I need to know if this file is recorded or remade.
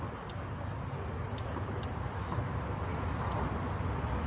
recorded